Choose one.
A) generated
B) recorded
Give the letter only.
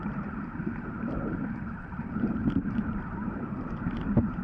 A